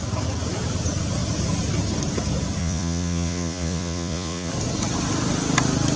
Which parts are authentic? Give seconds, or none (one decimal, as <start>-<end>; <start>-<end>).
0.0-2.6; 4.5-6.0